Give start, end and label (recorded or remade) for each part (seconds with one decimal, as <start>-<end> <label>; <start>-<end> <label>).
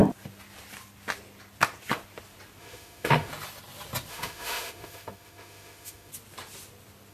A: 0.0-2.6 recorded; 2.6-3.3 remade; 3.3-4.1 recorded; 4.1-6.1 remade; 6.1-7.1 recorded